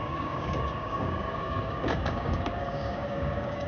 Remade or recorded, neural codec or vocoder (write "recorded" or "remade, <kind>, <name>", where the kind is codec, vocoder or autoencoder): remade, codec, DAC